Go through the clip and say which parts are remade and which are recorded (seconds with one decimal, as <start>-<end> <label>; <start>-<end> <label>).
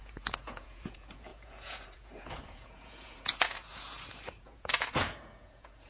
0.0-5.9 remade